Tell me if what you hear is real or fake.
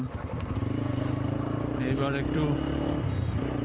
real